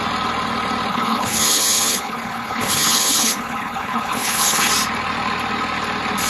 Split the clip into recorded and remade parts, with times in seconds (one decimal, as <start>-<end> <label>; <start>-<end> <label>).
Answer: 0.0-0.9 recorded; 0.9-4.7 remade; 4.7-6.3 recorded